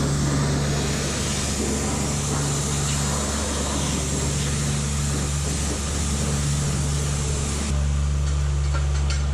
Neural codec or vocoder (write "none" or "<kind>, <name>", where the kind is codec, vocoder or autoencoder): none